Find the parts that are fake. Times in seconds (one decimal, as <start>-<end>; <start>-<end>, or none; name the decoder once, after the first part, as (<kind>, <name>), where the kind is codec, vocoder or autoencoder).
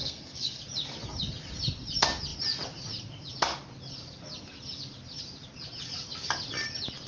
0.0-0.6 (codec, SNAC)